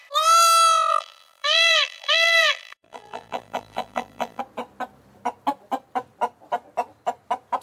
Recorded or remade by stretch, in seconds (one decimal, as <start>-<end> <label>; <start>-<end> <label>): 0.0-0.9 recorded; 0.9-4.4 remade; 4.4-7.6 recorded